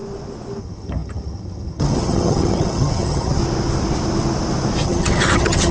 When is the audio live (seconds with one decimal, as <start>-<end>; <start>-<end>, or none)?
0.0-0.6; 3.4-4.8